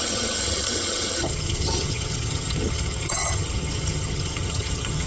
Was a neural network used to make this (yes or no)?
yes